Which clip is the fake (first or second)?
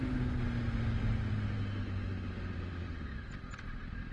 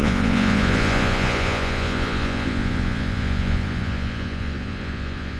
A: second